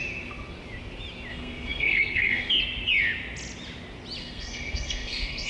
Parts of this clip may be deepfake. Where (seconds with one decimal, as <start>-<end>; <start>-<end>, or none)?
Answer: 1.3-2.6; 4.2-5.5